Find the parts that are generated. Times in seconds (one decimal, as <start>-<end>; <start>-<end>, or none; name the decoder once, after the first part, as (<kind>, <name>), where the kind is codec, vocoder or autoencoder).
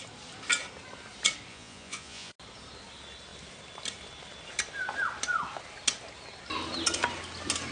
1.5-2.3 (vocoder, Vocos)